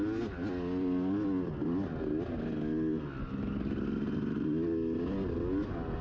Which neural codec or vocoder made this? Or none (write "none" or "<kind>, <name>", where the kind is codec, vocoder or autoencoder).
none